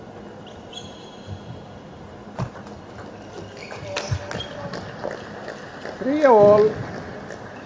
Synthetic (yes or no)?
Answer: no